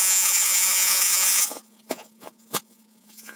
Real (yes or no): no